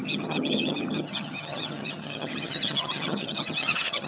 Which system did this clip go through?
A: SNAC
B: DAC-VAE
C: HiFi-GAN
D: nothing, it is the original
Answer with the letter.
C